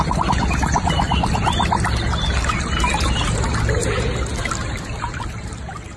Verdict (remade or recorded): recorded